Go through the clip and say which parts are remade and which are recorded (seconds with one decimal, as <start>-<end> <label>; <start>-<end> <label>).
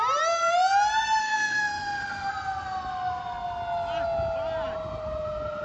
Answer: 0.0-1.2 recorded; 1.2-2.3 remade; 2.3-5.6 recorded